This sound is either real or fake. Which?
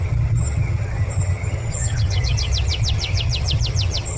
fake